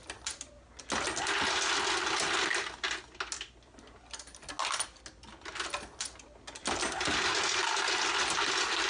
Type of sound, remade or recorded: recorded